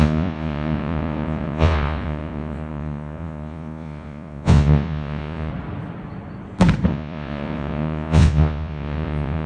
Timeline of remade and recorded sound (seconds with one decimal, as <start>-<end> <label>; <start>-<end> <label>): 0.0-5.5 remade; 5.5-6.9 recorded; 6.9-9.5 remade